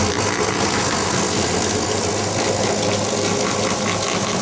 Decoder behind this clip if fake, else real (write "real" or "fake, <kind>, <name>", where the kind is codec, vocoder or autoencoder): real